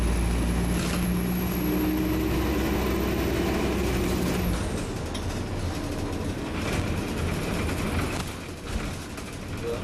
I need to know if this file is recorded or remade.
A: recorded